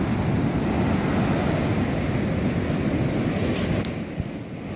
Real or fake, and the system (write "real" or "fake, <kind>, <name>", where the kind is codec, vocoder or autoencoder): real